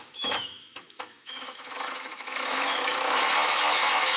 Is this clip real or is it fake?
fake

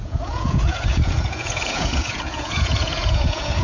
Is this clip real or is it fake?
fake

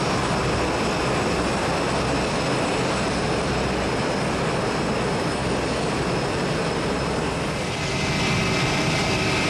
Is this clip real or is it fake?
real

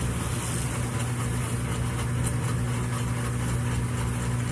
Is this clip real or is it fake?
real